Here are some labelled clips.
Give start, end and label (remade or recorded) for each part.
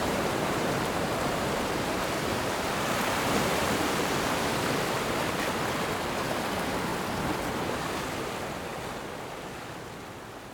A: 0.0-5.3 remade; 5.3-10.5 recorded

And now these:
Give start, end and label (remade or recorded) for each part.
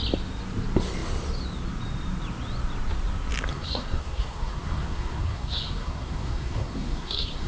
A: 0.0-3.5 recorded; 3.5-7.5 remade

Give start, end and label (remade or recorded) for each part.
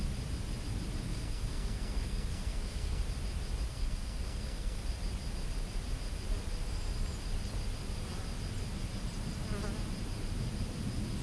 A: 0.0-1.1 recorded; 1.1-3.0 remade; 3.0-3.7 recorded; 3.7-4.8 remade; 4.8-11.2 recorded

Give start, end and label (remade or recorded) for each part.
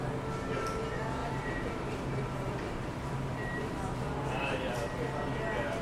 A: 0.0-1.2 recorded; 1.2-4.7 remade; 4.7-5.8 recorded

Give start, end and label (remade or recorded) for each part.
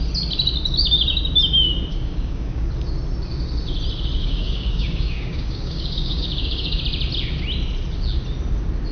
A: 0.0-1.9 recorded; 1.9-2.7 remade; 2.7-4.2 recorded; 4.2-6.8 remade; 6.8-8.9 recorded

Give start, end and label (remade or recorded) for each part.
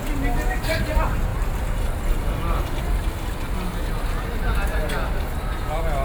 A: 0.0-6.0 recorded